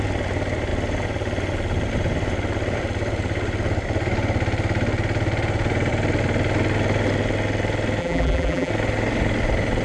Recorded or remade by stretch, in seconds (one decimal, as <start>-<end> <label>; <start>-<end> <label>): 0.0-8.0 recorded; 8.0-8.7 remade; 8.7-9.8 recorded